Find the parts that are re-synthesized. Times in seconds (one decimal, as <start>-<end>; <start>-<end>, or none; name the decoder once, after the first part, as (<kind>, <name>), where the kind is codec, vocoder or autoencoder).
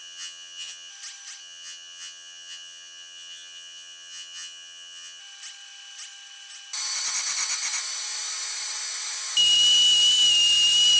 0.0-0.9 (vocoder, HiFi-GAN); 1.4-5.2